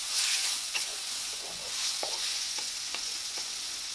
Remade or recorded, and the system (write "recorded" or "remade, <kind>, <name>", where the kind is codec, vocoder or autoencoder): remade, vocoder, Vocos